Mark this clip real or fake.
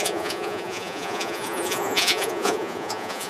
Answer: fake